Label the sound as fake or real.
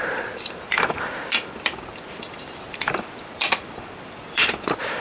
fake